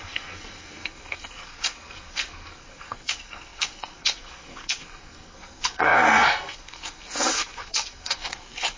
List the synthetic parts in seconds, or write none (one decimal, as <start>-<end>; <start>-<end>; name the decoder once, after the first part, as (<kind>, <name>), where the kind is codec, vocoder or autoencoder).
0.0-8.8 (codec, SNAC)